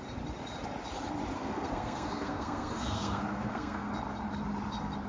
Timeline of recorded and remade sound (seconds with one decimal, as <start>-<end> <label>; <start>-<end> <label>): 0.0-1.4 recorded; 1.4-3.9 remade; 3.9-5.1 recorded